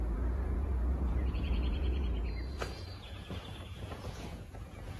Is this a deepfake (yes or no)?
yes